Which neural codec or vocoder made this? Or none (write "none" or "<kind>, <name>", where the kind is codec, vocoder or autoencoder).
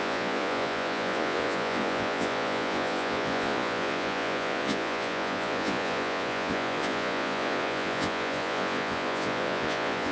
vocoder, Vocos